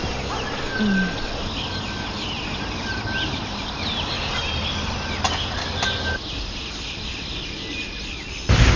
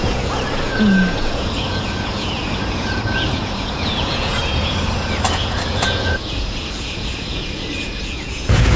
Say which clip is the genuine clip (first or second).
first